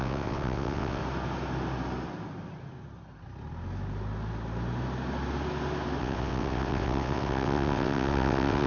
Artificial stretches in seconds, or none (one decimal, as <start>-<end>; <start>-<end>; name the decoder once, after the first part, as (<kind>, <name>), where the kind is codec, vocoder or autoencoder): 0.0-1.0 (vocoder, WaveNeXt); 6.0-8.7